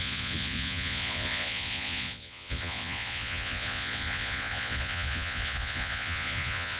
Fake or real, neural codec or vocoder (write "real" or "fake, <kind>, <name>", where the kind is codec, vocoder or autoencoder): fake, vocoder, Vocos